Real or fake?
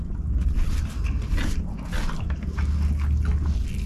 real